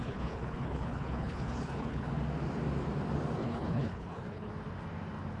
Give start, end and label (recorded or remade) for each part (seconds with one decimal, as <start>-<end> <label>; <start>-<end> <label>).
0.0-2.1 remade; 2.1-3.4 recorded; 3.4-4.5 remade; 4.5-5.4 recorded